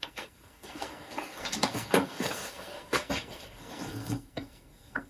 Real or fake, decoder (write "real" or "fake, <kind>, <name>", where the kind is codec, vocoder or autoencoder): fake, codec, SNAC